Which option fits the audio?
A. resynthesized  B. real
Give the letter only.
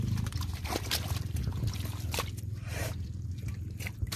A